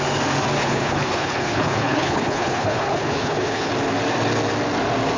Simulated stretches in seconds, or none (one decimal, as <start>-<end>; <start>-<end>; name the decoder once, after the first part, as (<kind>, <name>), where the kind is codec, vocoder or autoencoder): 0.6-3.7 (codec, HILCodec)